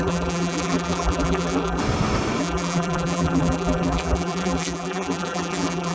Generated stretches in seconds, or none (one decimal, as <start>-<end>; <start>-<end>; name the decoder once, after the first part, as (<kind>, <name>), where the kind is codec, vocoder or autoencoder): 0.0-1.8 (vocoder, BigVGAN v2); 2.4-5.9